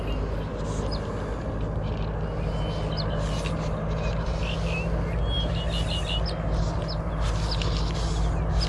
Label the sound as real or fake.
real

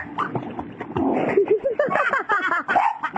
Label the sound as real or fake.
real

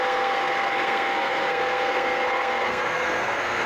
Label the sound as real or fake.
fake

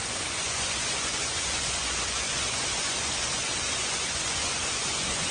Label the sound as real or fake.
fake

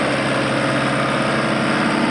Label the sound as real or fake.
real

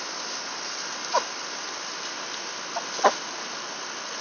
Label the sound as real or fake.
real